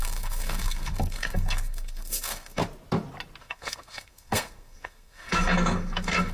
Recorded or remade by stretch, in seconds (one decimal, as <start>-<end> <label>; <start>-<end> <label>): 0.0-2.6 remade; 2.6-3.4 recorded; 3.4-6.3 remade